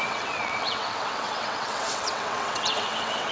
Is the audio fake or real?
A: fake